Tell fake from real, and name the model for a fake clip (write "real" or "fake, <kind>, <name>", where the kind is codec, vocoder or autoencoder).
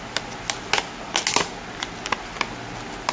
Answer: real